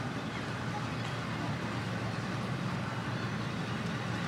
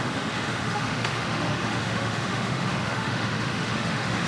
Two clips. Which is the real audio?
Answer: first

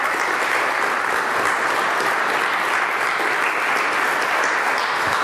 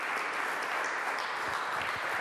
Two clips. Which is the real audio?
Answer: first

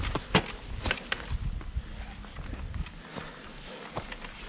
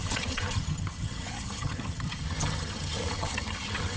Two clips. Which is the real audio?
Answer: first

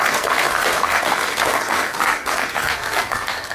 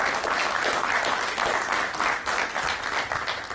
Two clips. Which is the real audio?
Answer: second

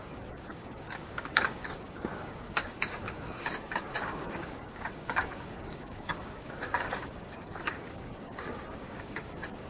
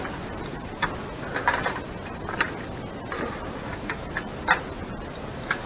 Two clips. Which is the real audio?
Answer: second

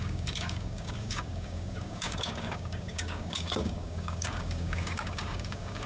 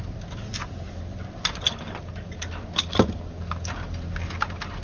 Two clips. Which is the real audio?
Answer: second